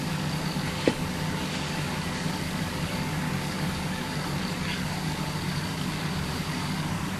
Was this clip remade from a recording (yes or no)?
yes